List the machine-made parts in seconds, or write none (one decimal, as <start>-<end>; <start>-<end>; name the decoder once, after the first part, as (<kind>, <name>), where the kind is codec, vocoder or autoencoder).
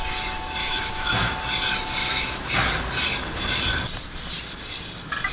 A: 0.6-1.3 (autoencoder, DAC-VAE); 2.0-2.5